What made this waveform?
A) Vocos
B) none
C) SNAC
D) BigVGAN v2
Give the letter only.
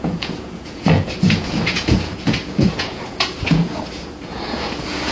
A